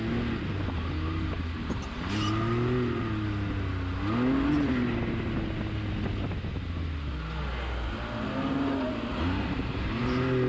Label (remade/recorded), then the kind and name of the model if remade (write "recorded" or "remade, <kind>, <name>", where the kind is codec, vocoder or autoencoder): recorded